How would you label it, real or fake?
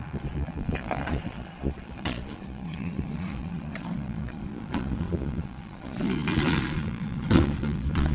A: fake